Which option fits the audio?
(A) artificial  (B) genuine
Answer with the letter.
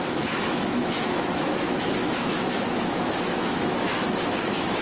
A